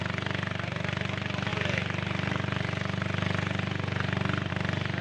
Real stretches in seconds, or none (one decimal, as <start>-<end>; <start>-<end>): 0.0-5.0